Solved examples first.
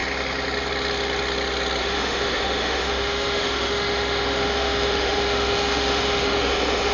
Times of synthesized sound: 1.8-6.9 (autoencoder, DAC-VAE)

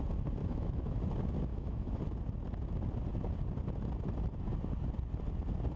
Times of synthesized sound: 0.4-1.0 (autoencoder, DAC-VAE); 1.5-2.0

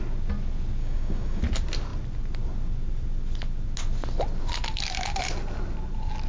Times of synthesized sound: 0.8-1.4 (codec, DAC)

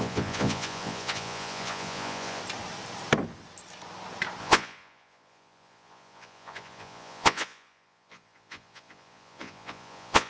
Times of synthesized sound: 0.0-2.4 (vocoder, Vocos); 4.4-10.3

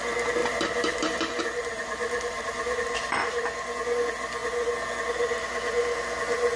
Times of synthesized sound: 0.4-3.4 (vocoder, BigVGAN v2)

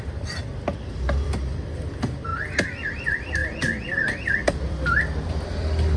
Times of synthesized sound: 0.0-2.3 (vocoder, BigVGAN v2); 2.9-6.0